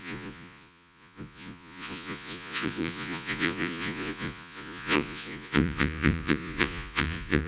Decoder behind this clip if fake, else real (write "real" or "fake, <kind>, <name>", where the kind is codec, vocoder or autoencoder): fake, vocoder, Vocos